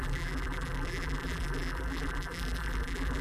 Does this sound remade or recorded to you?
remade